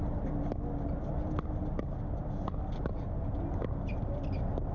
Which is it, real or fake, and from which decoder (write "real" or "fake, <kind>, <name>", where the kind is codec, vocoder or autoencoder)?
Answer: real